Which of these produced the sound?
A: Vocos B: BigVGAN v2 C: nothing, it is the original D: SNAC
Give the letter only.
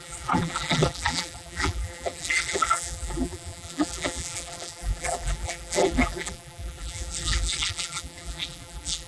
B